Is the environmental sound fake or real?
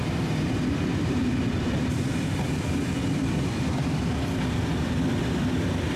fake